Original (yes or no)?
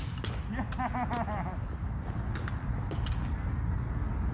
yes